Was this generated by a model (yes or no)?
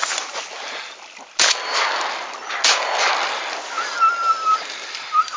no